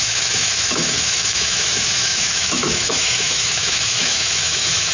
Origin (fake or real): fake